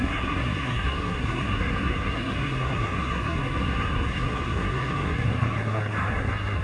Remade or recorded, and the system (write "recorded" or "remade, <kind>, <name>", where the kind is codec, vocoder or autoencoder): remade, codec, SNAC